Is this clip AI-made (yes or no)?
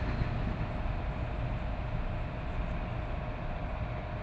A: no